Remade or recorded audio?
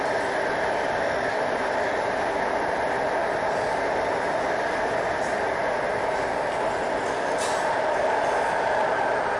recorded